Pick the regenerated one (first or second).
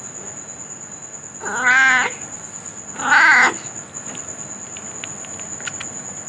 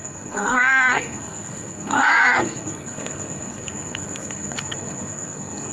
second